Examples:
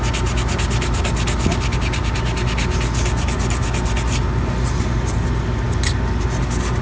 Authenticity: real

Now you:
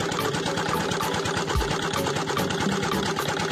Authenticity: real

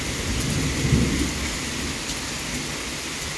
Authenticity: real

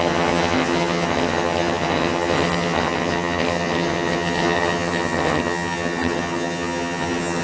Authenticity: fake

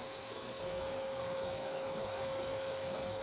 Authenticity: fake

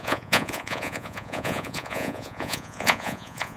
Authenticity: fake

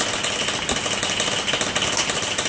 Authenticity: real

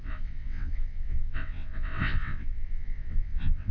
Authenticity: fake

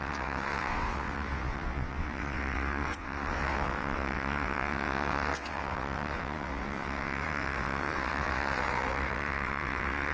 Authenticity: fake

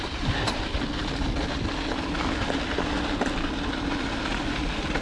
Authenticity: real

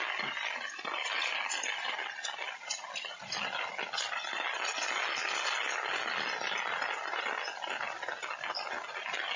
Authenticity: real